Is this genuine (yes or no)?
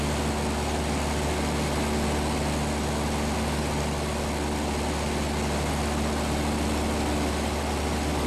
yes